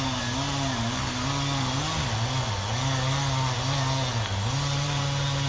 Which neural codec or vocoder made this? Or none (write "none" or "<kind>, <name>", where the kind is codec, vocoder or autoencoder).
none